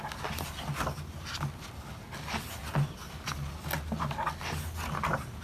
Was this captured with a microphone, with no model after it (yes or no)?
yes